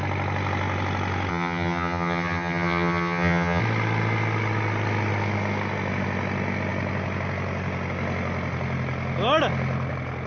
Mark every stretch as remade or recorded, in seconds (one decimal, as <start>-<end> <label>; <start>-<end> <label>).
0.0-1.3 recorded; 1.3-3.6 remade; 3.6-10.3 recorded